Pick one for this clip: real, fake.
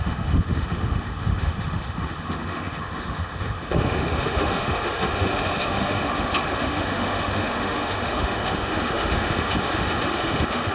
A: fake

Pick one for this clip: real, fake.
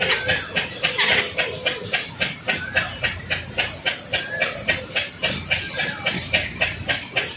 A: real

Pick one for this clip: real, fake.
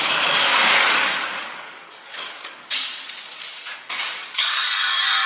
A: fake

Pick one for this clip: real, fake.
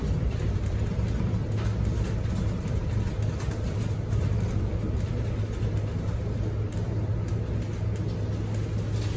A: real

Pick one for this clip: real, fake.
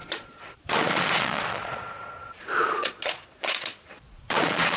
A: fake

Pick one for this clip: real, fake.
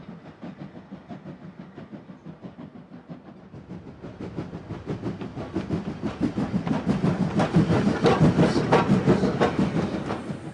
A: real